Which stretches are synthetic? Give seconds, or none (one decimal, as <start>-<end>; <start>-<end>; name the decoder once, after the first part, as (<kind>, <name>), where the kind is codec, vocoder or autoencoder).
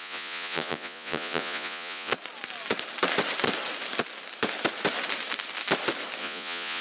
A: 0.0-2.1 (vocoder, Vocos); 6.2-6.8